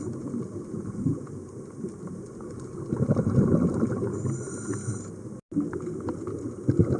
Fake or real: real